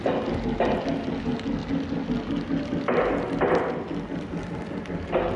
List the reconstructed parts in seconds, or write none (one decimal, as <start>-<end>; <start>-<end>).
none